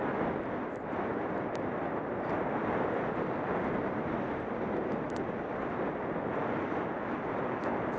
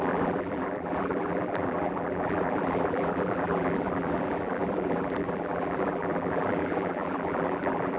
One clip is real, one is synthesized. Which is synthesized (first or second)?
second